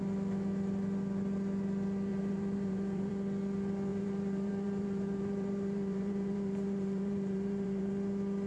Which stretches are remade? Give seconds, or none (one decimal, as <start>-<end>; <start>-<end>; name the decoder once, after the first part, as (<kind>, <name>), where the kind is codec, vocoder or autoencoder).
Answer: 2.1-3.1 (vocoder, BigVGAN v2); 3.9-7.9